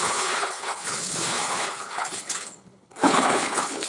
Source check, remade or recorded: remade